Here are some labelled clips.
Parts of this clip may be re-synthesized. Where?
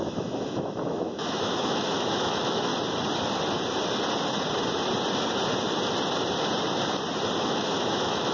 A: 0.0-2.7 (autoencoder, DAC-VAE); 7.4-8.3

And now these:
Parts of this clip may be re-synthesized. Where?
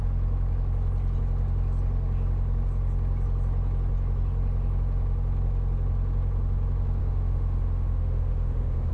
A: 7.0-8.9 (autoencoder, DAC-VAE)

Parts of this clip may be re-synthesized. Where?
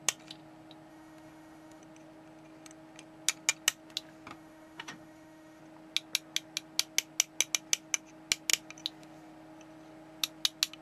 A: 0.9-1.8 (autoencoder, DAC-VAE); 4.3-5.6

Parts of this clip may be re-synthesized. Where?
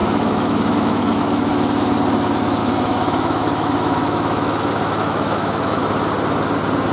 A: 0.0-1.5 (autoencoder, DAC-VAE); 2.6-5.9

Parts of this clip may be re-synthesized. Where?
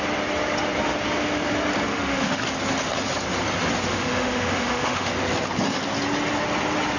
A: 1.9-2.4 (autoencoder, DAC-VAE); 3.9-5.1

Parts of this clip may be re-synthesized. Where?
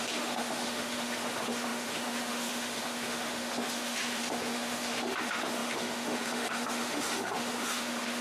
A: 0.0-8.2 (autoencoder, DAC-VAE)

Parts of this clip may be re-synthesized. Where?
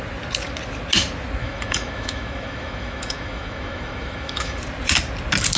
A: 1.4-4.6 (autoencoder, DAC-VAE)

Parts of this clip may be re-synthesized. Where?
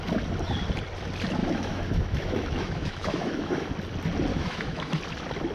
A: 1.4-3.7 (autoencoder, DAC-VAE); 4.3-5.0